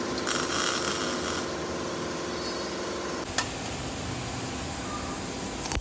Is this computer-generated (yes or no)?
no